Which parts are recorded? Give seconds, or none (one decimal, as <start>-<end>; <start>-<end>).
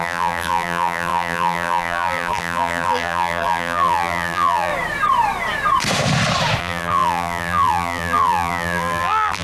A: 4.7-6.6